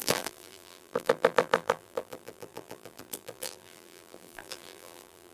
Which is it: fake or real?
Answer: fake